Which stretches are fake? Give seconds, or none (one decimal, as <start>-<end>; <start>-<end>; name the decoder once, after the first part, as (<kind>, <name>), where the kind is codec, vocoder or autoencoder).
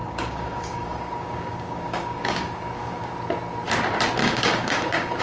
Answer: 0.0-3.1 (codec, DAC); 4.2-5.2